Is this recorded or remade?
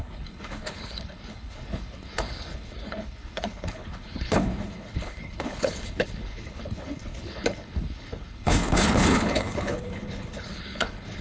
remade